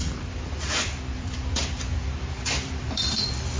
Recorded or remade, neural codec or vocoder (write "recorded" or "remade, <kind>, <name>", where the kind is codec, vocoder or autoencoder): remade, vocoder, BigVGAN v2